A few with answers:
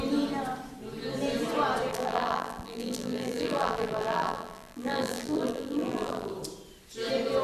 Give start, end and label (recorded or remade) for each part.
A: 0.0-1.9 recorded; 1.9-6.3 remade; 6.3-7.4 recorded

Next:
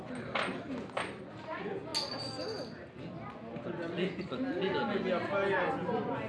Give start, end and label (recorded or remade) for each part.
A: 0.0-0.5 recorded; 0.5-1.2 remade; 1.2-6.3 recorded

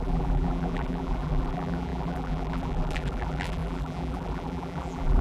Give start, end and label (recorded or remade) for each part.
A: 0.0-5.2 remade